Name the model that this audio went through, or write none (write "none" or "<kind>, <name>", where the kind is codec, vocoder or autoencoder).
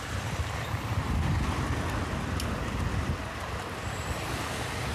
none